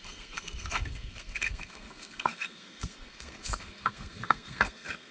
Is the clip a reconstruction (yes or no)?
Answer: yes